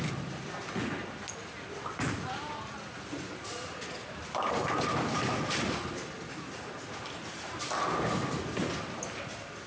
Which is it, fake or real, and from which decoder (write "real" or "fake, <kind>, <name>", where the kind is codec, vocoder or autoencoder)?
real